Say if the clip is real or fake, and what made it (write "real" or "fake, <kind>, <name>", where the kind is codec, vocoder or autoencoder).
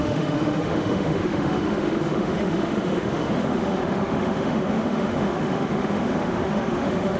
fake, autoencoder, DAC-VAE